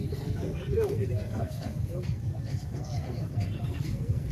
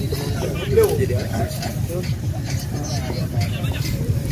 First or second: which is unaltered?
second